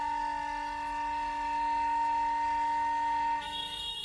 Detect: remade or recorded remade